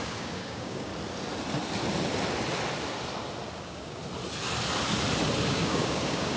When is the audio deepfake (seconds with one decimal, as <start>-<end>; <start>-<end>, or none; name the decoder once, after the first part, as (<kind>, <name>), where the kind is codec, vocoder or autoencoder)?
0.0-0.9 (codec, DAC); 3.6-4.0; 5.5-6.4